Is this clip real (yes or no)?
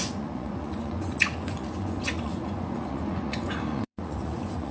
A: no